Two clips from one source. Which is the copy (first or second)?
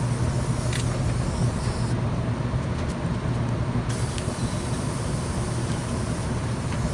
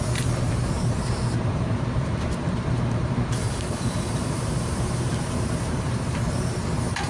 second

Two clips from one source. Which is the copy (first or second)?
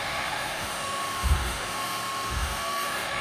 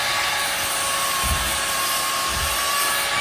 first